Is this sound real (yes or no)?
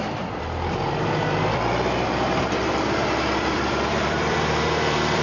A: no